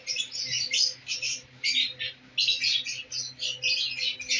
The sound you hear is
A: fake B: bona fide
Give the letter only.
B